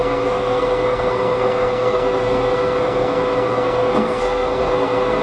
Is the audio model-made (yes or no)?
yes